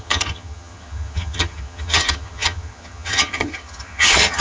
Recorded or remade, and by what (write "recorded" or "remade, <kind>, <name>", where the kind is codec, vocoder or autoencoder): remade, vocoder, HiFi-GAN